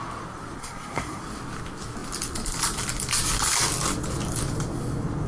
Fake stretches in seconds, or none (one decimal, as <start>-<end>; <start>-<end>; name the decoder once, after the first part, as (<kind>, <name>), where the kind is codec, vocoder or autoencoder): 0.6-1.2 (codec, SNAC)